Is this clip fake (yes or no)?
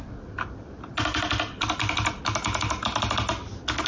no